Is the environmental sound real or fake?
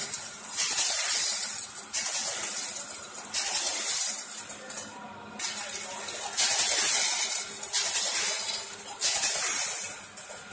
real